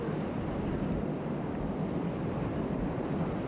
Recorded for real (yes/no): no